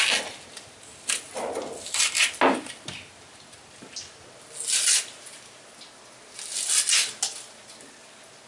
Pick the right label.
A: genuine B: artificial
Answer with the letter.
A